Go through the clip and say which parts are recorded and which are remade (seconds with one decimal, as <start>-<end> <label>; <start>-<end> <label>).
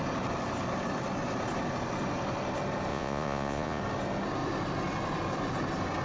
0.0-2.9 recorded; 2.9-3.8 remade; 3.8-6.0 recorded